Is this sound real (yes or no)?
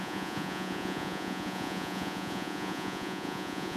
no